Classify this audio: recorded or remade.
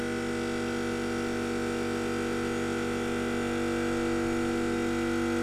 recorded